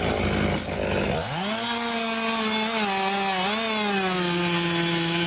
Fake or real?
real